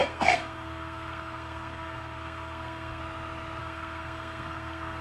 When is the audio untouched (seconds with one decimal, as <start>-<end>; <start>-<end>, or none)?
3.0-3.6